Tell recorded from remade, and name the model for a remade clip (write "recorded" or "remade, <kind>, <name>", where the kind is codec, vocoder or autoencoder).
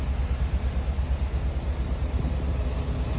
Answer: recorded